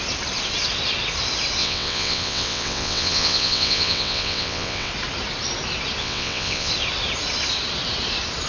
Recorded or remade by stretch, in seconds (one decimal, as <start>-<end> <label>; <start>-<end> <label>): 0.0-1.6 recorded; 1.6-4.9 remade; 4.9-6.0 recorded; 6.0-6.7 remade; 6.7-8.5 recorded